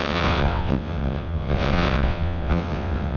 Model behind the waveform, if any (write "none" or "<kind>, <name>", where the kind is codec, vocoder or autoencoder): vocoder, WaveNeXt